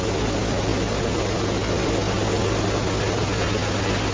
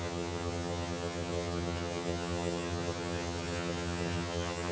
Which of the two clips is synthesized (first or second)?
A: second